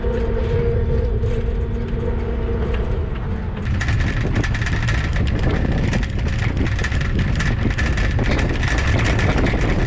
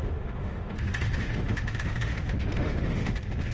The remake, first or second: second